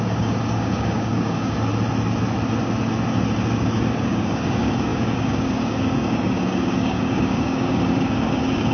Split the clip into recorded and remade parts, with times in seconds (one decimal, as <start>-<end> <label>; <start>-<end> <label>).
0.0-1.7 remade; 1.7-3.5 recorded; 3.5-8.7 remade